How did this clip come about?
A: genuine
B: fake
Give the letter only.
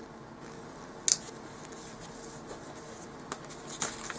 A